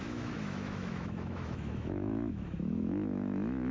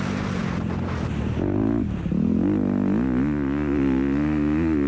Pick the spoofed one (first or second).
first